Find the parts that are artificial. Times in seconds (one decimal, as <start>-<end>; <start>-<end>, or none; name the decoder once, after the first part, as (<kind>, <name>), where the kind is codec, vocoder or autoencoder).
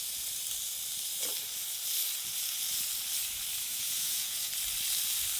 3.7-4.5 (vocoder, Vocos)